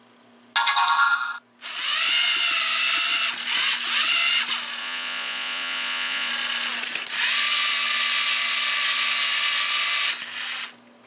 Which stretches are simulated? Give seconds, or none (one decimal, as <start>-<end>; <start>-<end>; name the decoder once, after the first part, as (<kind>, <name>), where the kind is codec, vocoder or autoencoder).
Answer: 4.8-6.3 (vocoder, Vocos)